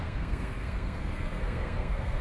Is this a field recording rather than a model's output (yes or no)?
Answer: no